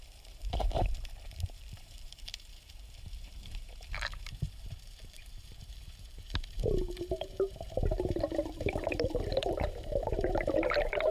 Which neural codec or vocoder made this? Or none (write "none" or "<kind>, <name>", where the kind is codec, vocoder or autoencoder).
vocoder, BigVGAN v2